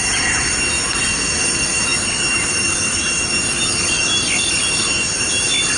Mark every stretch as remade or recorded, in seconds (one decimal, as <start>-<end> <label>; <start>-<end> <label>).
0.0-5.8 recorded